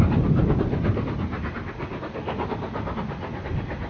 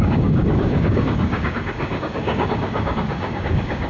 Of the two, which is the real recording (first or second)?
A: first